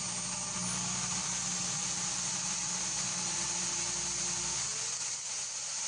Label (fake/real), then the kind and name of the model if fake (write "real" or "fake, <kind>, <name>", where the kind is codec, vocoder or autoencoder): real